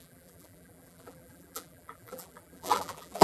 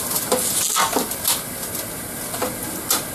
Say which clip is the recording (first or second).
second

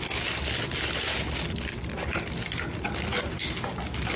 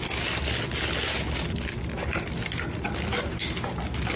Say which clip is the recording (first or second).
second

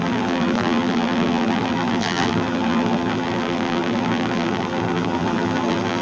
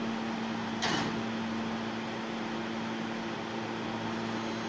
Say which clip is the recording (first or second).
second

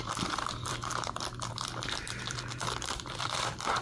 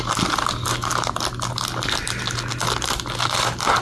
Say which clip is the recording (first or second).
second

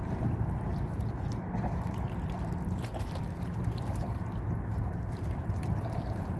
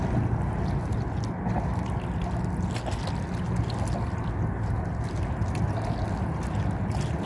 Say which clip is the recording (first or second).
second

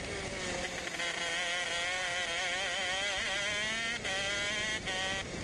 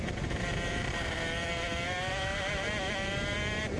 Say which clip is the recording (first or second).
first